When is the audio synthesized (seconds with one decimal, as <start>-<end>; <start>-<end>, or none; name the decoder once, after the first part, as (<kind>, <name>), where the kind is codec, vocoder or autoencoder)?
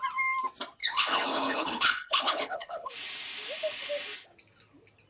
0.8-2.9 (codec, HILCodec)